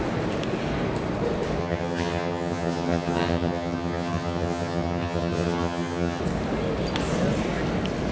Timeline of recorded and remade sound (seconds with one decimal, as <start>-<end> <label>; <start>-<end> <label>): 0.0-1.6 recorded; 1.6-6.2 remade; 6.2-8.1 recorded